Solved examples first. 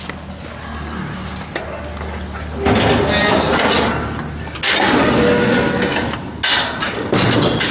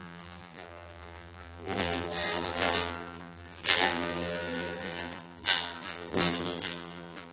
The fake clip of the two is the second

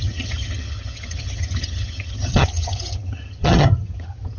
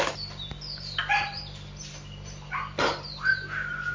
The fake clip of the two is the first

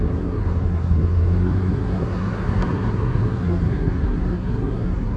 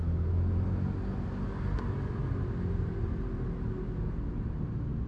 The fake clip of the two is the first